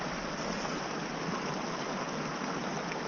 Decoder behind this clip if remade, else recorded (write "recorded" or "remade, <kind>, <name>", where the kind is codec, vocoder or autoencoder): recorded